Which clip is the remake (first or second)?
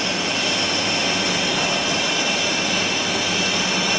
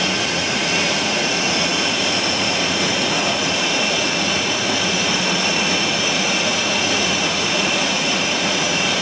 second